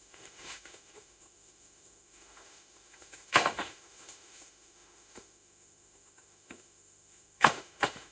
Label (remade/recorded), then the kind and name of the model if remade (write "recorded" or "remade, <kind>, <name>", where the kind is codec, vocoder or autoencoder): remade, autoencoder, DAC-VAE